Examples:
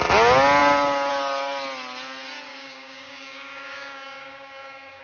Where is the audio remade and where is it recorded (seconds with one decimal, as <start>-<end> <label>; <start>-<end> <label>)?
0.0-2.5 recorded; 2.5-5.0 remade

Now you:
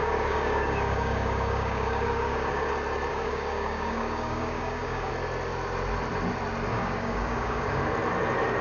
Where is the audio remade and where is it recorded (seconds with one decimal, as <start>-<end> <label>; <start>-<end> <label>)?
0.0-2.7 remade; 2.7-3.1 recorded; 3.1-5.1 remade; 5.1-6.7 recorded; 6.7-7.8 remade; 7.8-8.6 recorded

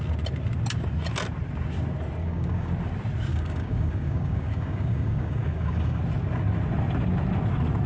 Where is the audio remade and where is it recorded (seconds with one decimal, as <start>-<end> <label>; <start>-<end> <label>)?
0.0-2.2 recorded; 2.2-2.7 remade; 2.7-3.3 recorded; 3.3-6.0 remade; 6.0-7.9 recorded

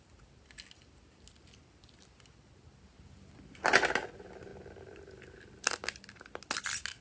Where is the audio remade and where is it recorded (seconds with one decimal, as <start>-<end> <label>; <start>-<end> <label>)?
0.0-7.0 recorded

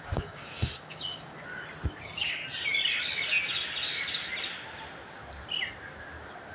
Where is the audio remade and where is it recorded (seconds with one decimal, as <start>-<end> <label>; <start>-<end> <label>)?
0.0-1.3 remade; 1.3-2.0 recorded; 2.0-2.4 remade; 2.4-6.5 recorded

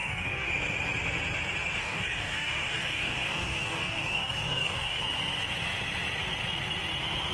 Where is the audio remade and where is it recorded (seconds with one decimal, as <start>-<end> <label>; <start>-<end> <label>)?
0.0-0.5 remade; 0.5-1.8 recorded; 1.8-5.0 remade; 5.0-7.3 recorded